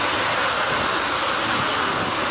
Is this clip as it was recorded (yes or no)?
yes